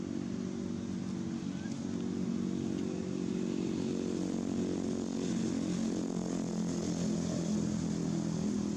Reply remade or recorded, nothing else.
recorded